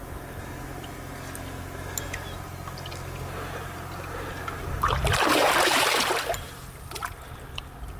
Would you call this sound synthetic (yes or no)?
no